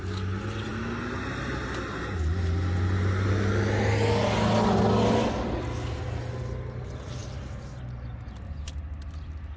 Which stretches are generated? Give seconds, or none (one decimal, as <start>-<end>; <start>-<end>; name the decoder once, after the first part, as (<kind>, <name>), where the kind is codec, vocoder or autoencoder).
none